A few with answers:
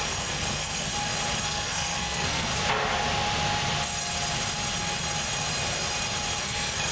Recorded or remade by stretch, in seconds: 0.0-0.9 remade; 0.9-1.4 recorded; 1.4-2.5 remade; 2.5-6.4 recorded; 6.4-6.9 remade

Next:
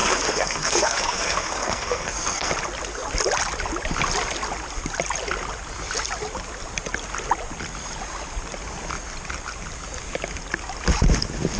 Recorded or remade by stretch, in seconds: 0.0-2.5 remade; 2.5-11.6 recorded

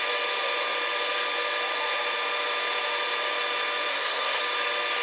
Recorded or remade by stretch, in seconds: 0.0-3.9 recorded; 3.9-4.4 remade; 4.4-5.0 recorded

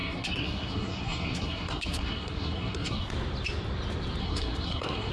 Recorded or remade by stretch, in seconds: 0.0-3.1 remade; 3.1-4.2 recorded; 4.2-5.1 remade